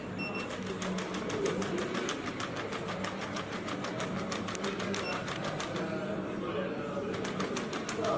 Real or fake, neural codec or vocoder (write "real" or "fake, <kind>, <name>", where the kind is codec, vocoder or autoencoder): real